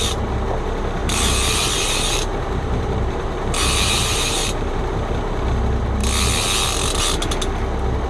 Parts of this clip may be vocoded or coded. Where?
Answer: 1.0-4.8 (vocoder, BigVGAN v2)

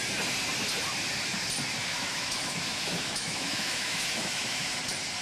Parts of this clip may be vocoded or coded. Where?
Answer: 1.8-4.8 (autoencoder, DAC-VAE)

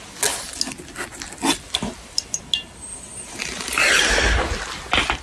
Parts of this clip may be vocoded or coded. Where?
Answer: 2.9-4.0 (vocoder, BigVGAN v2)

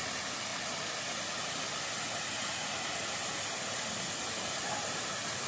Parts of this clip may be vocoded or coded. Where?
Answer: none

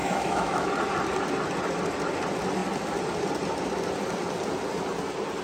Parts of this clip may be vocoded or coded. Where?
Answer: 0.0-0.7 (autoencoder, DAC-VAE)

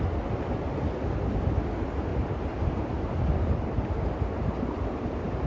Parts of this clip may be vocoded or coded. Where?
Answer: 2.1-5.5 (vocoder, BigVGAN v2)

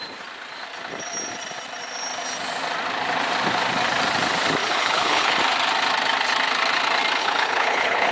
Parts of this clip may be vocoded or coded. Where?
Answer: 4.6-5.4 (codec, HILCodec); 7.2-8.1

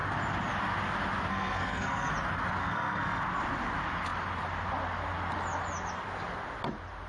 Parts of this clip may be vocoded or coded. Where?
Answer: 1.3-2.1 (codec, SNAC); 2.6-3.2